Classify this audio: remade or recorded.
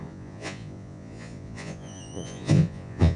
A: remade